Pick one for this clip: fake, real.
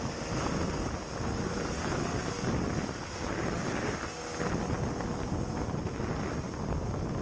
real